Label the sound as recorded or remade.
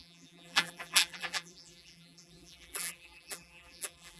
remade